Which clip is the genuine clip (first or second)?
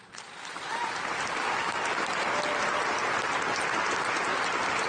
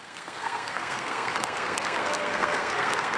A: first